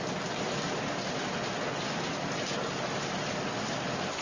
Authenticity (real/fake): real